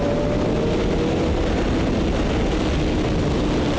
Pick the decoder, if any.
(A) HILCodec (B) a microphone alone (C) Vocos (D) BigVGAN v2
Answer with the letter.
B